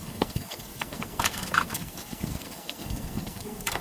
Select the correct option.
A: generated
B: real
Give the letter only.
A